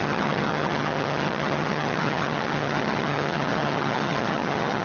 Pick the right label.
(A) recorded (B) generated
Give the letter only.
B